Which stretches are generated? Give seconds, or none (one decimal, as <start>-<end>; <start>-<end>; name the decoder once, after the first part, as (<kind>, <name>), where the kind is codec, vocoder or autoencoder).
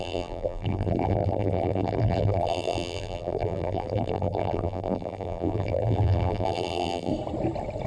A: 0.0-7.1 (vocoder, BigVGAN v2)